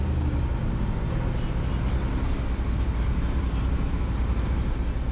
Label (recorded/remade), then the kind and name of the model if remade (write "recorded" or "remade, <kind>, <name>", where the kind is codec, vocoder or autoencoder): recorded